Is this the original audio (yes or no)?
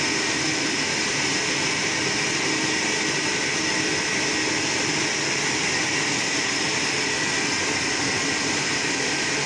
yes